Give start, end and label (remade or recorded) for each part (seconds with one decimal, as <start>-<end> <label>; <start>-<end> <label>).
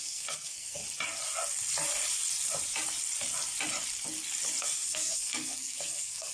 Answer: 0.0-0.8 remade; 0.8-4.6 recorded; 4.6-6.3 remade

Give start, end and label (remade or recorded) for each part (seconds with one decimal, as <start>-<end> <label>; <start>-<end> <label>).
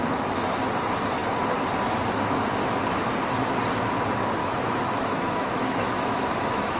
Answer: 0.0-4.4 recorded; 4.4-6.8 remade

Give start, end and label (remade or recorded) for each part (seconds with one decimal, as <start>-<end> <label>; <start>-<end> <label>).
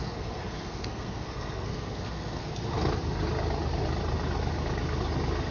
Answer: 0.0-2.5 remade; 2.5-5.5 recorded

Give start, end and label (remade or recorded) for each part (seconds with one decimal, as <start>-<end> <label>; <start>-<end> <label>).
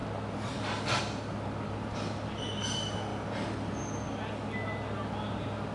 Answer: 0.0-5.7 recorded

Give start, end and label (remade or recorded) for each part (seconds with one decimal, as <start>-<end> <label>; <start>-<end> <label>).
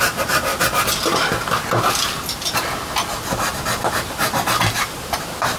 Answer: 0.0-0.5 remade; 0.5-3.9 recorded; 3.9-5.6 remade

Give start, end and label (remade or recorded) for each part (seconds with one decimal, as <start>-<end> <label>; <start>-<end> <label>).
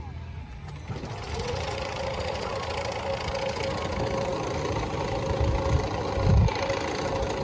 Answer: 0.0-1.2 recorded; 1.2-2.5 remade; 2.5-7.4 recorded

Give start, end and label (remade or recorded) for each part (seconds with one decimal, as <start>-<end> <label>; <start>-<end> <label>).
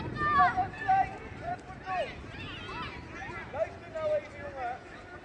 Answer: 0.0-5.2 recorded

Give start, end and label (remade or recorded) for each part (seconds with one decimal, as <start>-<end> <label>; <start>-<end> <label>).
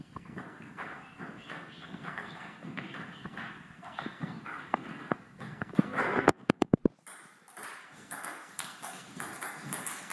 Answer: 0.0-6.8 remade; 6.8-7.8 recorded; 7.8-10.1 remade